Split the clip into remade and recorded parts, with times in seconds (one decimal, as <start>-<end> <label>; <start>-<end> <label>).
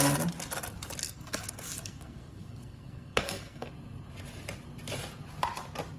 0.0-1.0 recorded; 1.0-3.7 remade; 3.7-6.0 recorded